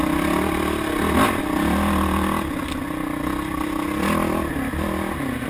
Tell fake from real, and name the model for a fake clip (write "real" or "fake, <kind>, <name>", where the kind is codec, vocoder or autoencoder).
real